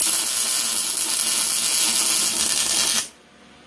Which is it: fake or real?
real